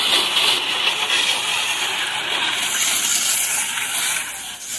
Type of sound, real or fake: real